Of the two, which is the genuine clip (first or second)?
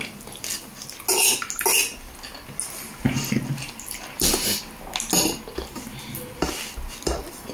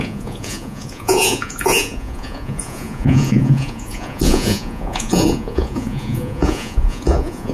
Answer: first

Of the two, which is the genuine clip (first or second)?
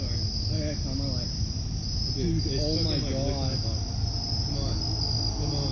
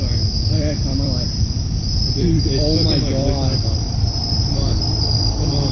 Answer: first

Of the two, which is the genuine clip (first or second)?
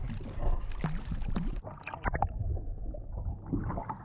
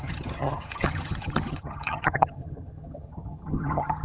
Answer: first